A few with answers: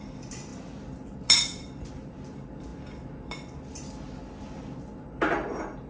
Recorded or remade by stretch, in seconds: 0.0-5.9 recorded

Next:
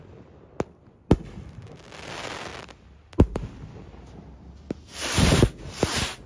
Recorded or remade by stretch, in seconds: 0.0-2.5 recorded; 2.5-4.4 remade; 4.4-6.3 recorded

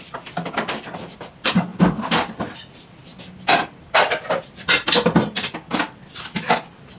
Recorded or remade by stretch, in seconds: 0.0-7.0 recorded

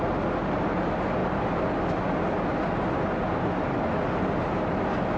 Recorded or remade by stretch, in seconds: 0.0-5.2 recorded

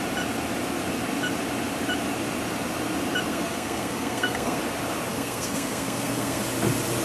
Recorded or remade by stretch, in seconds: 0.0-3.3 recorded; 3.3-4.6 remade; 4.6-5.1 recorded; 5.1-6.4 remade; 6.4-7.0 recorded